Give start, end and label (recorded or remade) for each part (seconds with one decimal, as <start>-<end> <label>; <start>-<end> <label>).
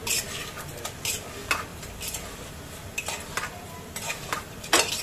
0.0-0.7 remade; 0.7-1.7 recorded; 1.7-5.0 remade